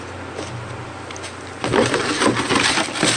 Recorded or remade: recorded